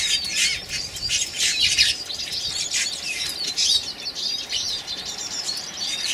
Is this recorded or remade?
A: remade